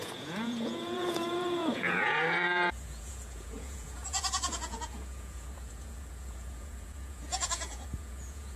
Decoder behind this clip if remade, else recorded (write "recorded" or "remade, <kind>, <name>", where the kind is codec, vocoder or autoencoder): remade, vocoder, Vocos